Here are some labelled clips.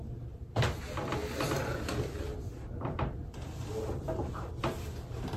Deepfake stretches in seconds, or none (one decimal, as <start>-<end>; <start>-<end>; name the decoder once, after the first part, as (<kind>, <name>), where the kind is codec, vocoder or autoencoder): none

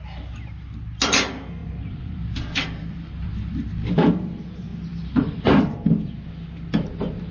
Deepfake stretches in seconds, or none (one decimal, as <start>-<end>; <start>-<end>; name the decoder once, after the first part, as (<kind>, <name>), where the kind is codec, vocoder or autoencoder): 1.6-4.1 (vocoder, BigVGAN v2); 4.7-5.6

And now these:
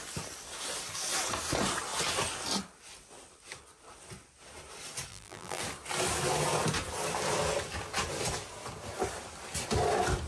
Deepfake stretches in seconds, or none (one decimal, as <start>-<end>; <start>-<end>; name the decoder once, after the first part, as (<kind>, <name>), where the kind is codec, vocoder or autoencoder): 5.1-5.6 (vocoder, BigVGAN v2)

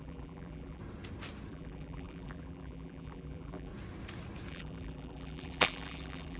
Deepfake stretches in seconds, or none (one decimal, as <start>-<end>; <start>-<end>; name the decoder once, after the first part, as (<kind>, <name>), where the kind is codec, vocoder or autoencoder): 0.0-0.8 (vocoder, BigVGAN v2); 1.5-3.7; 4.5-6.4

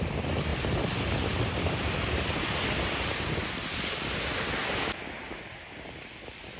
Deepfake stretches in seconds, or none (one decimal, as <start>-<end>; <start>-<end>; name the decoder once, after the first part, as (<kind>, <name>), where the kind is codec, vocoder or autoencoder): none